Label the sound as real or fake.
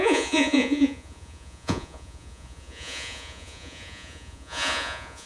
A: fake